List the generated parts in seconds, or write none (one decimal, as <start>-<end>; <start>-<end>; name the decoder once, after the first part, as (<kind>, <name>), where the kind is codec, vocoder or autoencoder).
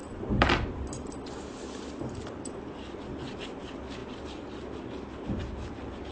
none